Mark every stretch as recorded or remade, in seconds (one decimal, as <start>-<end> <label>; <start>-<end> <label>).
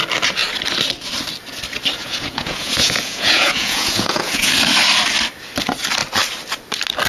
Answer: 0.0-2.0 recorded; 2.0-4.5 remade; 4.5-7.1 recorded